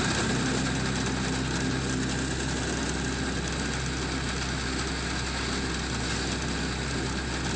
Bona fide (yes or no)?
yes